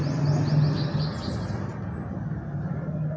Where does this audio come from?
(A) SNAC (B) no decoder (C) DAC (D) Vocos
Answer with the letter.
B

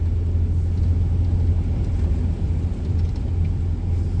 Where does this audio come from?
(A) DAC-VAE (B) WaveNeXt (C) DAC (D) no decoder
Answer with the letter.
D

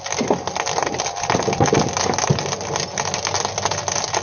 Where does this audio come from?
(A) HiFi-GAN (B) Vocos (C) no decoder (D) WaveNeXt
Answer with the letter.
C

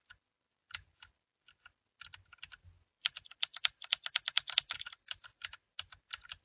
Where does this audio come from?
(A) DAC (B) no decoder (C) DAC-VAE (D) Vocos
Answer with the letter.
B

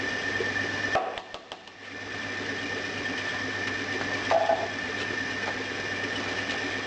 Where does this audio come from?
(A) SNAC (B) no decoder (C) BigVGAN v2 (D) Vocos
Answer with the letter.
C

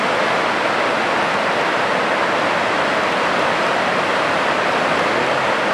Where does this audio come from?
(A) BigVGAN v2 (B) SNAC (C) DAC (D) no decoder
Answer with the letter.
D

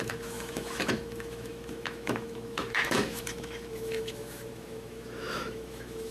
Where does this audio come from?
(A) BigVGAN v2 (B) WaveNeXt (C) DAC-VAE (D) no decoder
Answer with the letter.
C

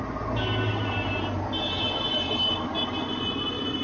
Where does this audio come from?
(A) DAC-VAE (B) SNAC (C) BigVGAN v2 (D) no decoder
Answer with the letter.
D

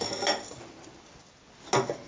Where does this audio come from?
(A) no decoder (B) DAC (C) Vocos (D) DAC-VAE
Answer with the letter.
A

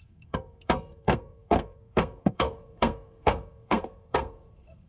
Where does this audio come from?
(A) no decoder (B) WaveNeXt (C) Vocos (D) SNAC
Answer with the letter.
D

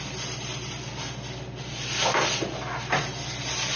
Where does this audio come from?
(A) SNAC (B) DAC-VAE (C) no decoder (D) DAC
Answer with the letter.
C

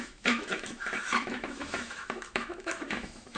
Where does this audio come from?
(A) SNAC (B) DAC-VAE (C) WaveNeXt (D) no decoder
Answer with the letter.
B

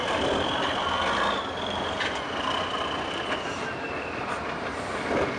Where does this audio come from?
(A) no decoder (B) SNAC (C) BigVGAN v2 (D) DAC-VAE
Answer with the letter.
A